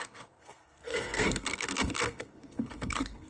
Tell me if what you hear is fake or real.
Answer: fake